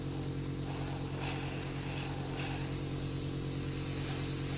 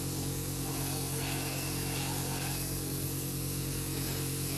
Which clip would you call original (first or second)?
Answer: first